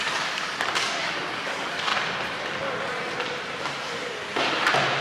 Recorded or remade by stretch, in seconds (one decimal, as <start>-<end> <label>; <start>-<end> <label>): 0.0-1.9 remade; 1.9-5.0 recorded